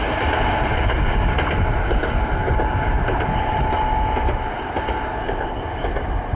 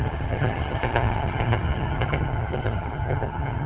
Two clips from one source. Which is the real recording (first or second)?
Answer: first